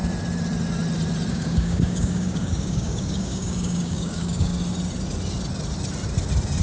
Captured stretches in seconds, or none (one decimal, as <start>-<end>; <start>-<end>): 0.0-1.3; 4.5-6.6